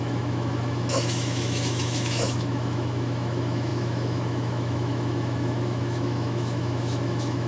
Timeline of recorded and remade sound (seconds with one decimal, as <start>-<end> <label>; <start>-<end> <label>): 0.0-7.5 remade